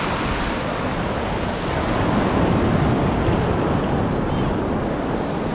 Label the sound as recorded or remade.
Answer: recorded